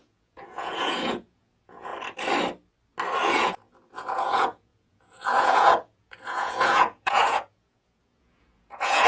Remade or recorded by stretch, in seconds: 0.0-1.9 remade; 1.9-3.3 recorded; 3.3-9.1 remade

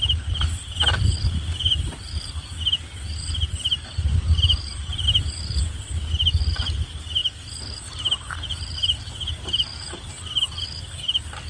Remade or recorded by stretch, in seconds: 0.0-11.5 recorded

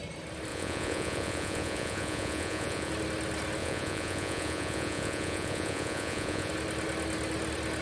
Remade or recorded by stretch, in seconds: 0.0-0.5 recorded; 0.5-2.9 remade; 2.9-3.6 recorded; 3.6-6.5 remade; 6.5-7.8 recorded

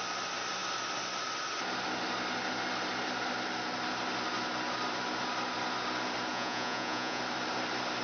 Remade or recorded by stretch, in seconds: 0.0-6.3 recorded; 6.3-7.2 remade; 7.2-8.0 recorded

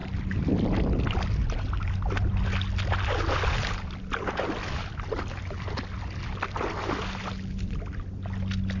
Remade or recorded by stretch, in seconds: 0.0-8.8 recorded

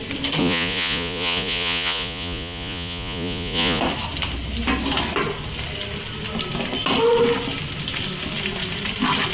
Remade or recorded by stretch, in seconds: 0.0-0.4 recorded; 0.4-3.8 remade; 3.8-9.3 recorded